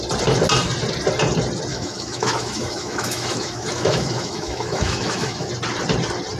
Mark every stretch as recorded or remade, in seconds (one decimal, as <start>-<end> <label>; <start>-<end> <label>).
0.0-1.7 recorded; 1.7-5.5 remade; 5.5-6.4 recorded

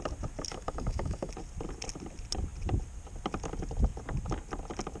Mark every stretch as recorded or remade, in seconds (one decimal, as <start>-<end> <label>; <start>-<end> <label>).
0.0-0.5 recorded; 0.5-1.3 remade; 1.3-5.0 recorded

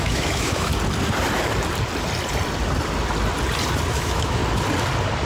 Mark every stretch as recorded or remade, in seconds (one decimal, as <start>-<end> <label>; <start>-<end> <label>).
0.0-0.7 remade; 0.7-3.9 recorded; 3.9-4.4 remade; 4.4-5.3 recorded

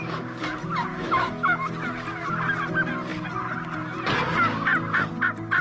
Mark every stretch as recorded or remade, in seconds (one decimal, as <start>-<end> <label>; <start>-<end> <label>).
0.0-0.9 recorded; 0.9-1.7 remade; 1.7-5.6 recorded